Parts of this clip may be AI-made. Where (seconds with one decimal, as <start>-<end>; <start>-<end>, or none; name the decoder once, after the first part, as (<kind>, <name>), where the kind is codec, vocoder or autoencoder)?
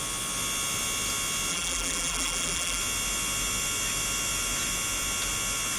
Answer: 1.5-2.8 (vocoder, BigVGAN v2)